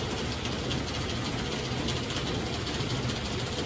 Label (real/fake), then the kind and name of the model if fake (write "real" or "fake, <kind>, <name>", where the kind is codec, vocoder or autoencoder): real